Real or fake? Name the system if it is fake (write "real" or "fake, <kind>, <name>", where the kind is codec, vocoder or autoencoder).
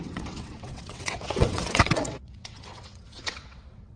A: fake, vocoder, WaveNeXt